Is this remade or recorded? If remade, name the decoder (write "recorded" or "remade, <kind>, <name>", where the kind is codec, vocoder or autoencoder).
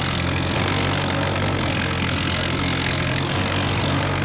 remade, codec, SNAC